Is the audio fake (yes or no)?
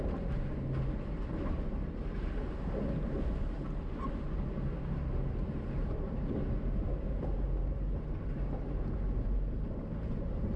no